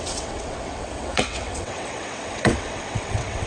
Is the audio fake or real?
fake